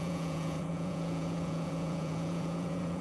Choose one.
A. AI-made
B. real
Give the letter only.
A